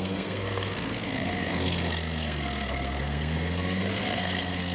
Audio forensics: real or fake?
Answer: fake